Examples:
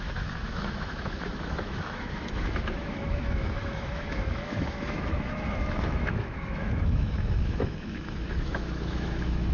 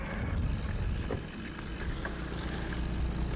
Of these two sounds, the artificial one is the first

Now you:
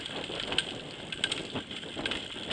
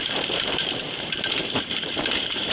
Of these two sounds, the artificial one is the second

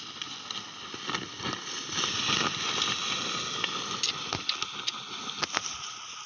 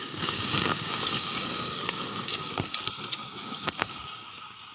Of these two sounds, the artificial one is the second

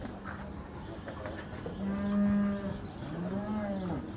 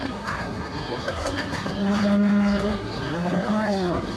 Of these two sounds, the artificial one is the second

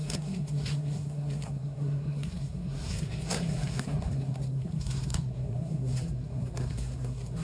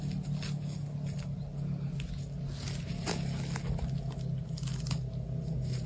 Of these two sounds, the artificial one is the first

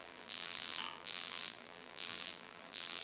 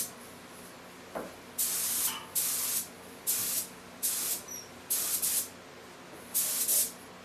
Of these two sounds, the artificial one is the first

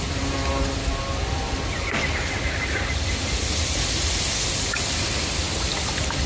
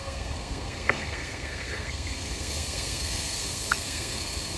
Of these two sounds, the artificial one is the second